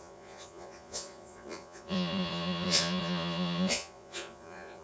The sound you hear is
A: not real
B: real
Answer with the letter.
A